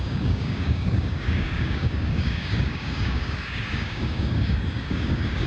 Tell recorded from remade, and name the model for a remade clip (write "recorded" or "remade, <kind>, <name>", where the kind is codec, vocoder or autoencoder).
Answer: remade, codec, DAC